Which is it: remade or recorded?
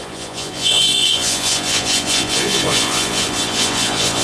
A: remade